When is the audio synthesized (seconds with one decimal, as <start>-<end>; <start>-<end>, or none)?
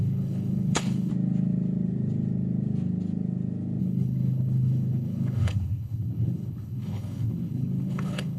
0.0-1.1; 3.8-8.4